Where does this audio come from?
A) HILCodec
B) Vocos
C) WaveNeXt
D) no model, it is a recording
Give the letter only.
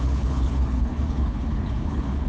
A